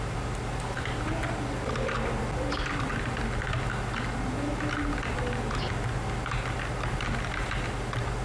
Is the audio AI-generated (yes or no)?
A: no